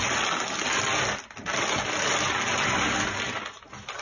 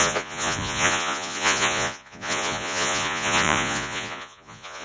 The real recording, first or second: first